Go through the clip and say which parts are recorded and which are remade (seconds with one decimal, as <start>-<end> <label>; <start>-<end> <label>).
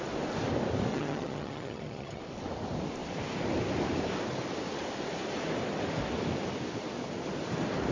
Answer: 0.0-0.9 recorded; 0.9-2.2 remade; 2.2-7.9 recorded